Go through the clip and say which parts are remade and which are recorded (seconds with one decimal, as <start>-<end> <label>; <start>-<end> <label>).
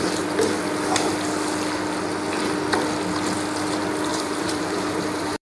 0.0-4.1 recorded; 4.1-5.4 remade